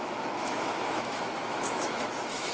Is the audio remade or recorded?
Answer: remade